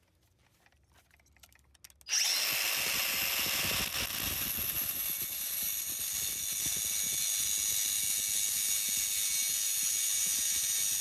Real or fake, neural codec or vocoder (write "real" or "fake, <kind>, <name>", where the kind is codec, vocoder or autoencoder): real